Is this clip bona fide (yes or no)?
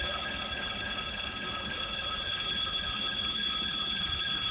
no